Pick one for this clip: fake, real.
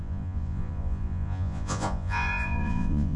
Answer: fake